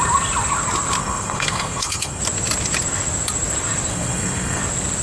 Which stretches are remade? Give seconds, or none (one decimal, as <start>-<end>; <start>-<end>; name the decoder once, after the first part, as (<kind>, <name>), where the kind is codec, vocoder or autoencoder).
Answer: 1.0-2.2 (codec, SNAC); 3.9-4.6